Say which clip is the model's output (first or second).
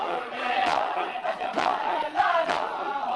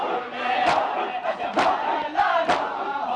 first